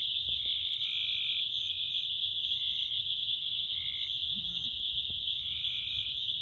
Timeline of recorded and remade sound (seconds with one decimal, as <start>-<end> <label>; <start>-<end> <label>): 0.0-1.0 remade; 1.0-1.9 recorded; 1.9-4.2 remade; 4.2-4.8 recorded; 4.8-6.4 remade

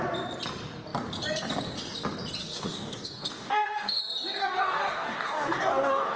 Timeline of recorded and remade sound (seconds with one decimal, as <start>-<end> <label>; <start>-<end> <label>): 0.0-2.4 recorded; 2.4-4.0 remade; 4.0-4.4 recorded; 4.4-6.2 remade